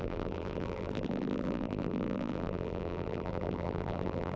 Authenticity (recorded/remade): remade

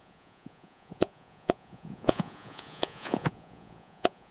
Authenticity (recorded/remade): remade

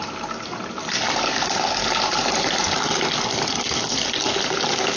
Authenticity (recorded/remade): recorded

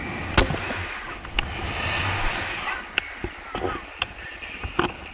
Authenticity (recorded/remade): recorded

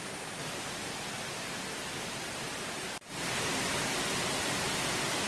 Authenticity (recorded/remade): recorded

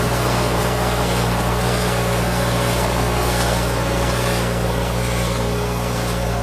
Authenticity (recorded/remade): remade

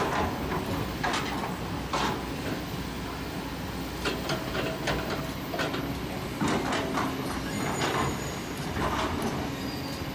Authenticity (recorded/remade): recorded